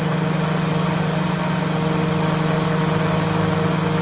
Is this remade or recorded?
recorded